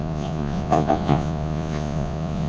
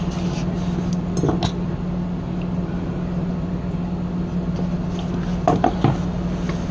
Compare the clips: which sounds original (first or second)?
second